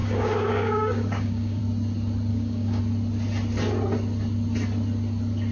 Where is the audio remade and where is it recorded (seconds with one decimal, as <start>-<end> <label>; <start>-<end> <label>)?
0.0-1.6 remade; 1.6-2.3 recorded; 2.3-2.8 remade; 2.8-5.5 recorded